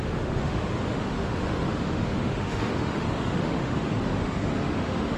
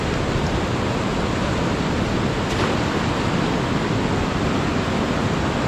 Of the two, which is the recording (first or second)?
second